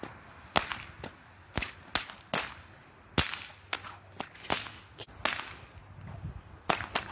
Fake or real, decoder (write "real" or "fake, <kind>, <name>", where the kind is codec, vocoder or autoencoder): real